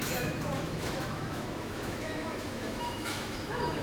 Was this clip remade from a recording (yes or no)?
yes